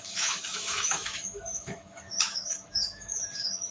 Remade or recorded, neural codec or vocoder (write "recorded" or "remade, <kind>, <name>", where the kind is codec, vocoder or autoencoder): remade, autoencoder, DAC-VAE